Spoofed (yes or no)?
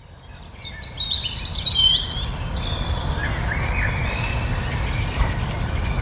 no